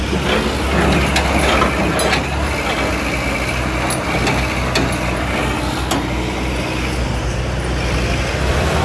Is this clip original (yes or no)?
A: yes